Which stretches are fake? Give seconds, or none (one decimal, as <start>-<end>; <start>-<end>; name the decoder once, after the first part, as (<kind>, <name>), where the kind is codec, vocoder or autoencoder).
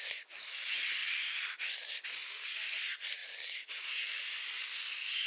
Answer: none